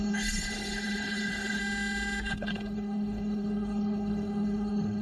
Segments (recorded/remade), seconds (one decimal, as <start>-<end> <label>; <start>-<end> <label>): 0.0-1.6 remade; 1.6-2.3 recorded; 2.3-5.0 remade